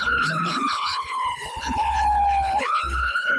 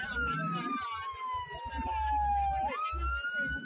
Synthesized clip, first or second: first